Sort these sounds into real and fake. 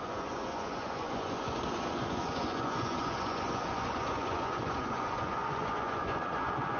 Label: fake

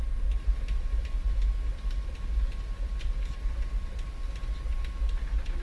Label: real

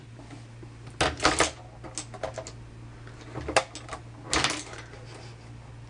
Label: real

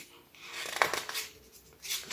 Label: real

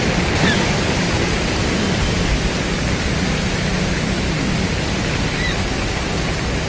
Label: real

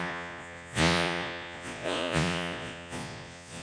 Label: fake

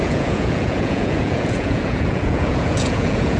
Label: fake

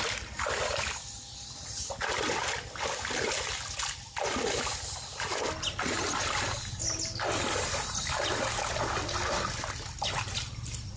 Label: real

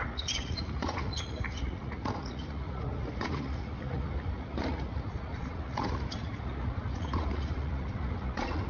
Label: fake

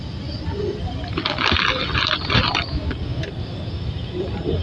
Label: real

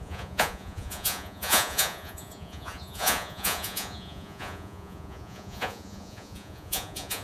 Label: fake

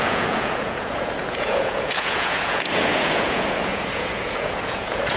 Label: fake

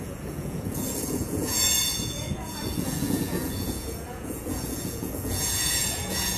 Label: fake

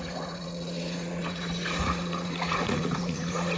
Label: fake